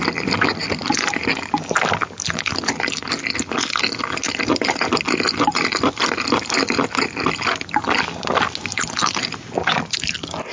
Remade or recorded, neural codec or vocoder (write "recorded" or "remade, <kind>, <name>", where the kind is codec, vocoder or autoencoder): recorded